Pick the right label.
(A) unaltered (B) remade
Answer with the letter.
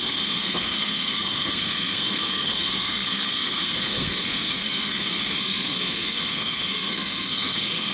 B